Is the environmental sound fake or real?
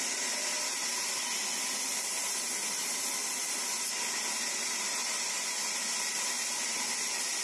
real